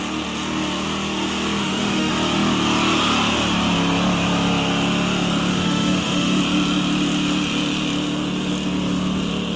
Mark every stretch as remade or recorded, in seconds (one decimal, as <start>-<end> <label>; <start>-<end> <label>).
0.0-1.6 recorded; 1.6-2.1 remade; 2.1-5.5 recorded; 5.5-6.4 remade; 6.4-9.6 recorded